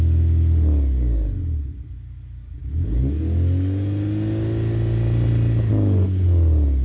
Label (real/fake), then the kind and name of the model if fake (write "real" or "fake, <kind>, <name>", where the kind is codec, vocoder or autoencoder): real